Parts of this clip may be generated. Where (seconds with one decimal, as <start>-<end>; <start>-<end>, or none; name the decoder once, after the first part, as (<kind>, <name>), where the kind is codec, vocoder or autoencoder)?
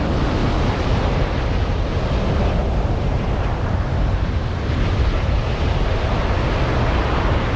0.4-2.0 (vocoder, BigVGAN v2); 2.6-6.2